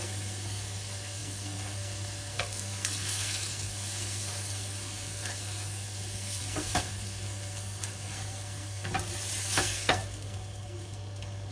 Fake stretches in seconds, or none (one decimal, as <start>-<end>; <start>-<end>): 0.0-8.9; 9.4-11.5